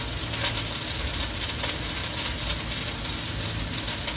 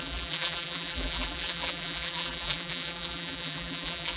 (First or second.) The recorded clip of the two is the first